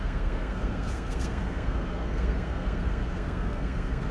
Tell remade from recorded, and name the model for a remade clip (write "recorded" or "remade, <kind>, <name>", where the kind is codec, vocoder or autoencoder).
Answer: remade, codec, SNAC